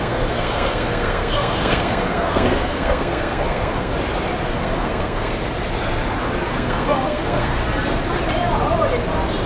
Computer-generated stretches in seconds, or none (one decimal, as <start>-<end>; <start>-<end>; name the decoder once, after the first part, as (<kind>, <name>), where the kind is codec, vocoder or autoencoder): 0.0-3.9 (codec, SNAC); 4.5-5.4; 6.5-7.6